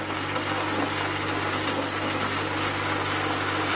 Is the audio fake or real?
real